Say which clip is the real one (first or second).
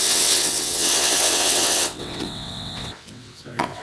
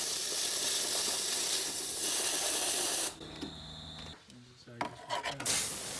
second